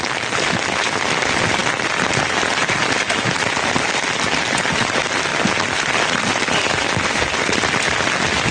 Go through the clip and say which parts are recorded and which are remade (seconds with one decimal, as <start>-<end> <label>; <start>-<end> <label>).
0.0-8.5 recorded